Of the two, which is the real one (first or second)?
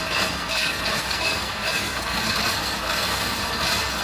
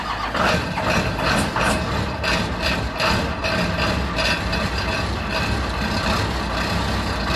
second